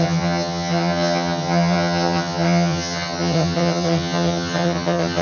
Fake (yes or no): yes